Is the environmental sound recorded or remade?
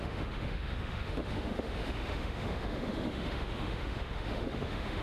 remade